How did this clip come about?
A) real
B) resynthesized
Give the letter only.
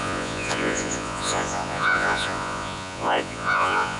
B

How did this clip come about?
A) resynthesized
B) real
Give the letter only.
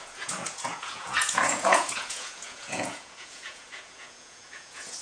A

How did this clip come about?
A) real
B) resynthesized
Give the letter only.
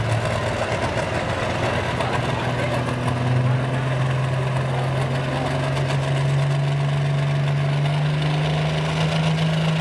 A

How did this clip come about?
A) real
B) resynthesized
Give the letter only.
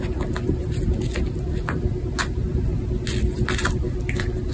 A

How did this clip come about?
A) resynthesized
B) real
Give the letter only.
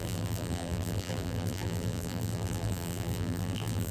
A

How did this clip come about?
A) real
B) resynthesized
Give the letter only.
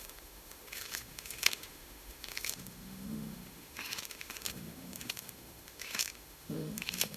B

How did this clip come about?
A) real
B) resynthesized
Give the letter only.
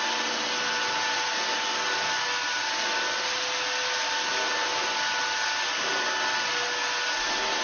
A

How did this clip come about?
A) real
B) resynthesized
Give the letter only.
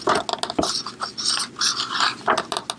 A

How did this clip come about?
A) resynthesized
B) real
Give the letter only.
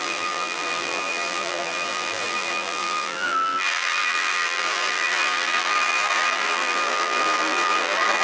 A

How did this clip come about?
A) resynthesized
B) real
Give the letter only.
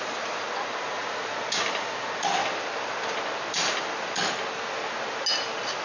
B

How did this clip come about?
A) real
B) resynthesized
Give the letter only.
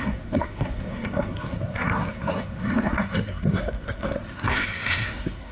B